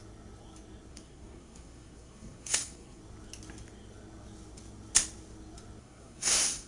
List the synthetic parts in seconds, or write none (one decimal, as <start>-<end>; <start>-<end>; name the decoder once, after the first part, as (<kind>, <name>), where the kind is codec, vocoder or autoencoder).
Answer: 0.9-3.0 (codec, SNAC); 5.8-6.7